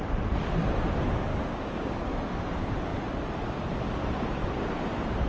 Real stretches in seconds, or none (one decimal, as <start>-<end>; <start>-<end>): 0.0-1.3; 2.2-5.3